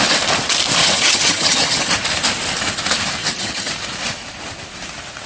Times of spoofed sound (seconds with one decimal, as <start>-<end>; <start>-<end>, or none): 0.8-1.9; 3.2-3.7